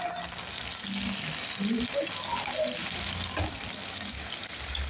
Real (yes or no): yes